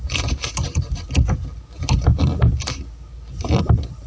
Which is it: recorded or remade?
recorded